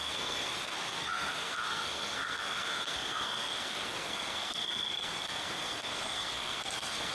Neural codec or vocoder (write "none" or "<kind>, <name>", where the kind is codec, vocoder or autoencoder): codec, SNAC